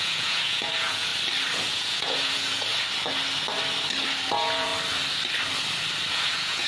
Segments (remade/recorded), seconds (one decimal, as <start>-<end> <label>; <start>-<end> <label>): 0.0-1.1 remade; 1.1-1.6 recorded; 1.6-2.7 remade; 2.7-4.3 recorded; 4.3-4.7 remade; 4.7-6.1 recorded; 6.1-6.7 remade